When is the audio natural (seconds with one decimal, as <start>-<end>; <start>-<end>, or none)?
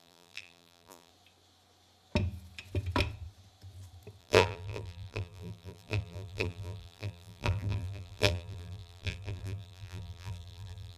1.1-4.2